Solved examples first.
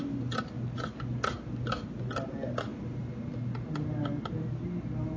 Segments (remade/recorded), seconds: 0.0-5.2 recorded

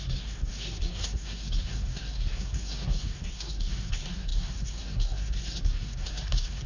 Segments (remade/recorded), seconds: 0.0-6.7 remade

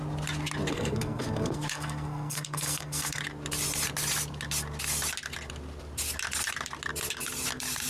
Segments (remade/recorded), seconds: 0.0-0.7 recorded; 0.7-3.2 remade; 3.2-7.9 recorded